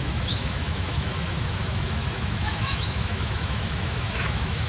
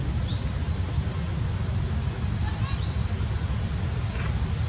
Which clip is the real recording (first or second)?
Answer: second